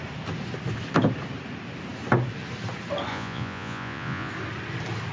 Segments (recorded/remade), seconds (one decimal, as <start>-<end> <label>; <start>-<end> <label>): 0.0-3.1 recorded; 3.1-4.3 remade; 4.3-5.1 recorded